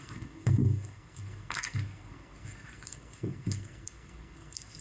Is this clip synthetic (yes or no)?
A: yes